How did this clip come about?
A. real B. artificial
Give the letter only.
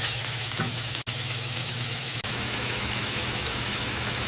B